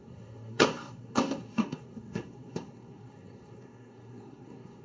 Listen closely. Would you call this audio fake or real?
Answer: fake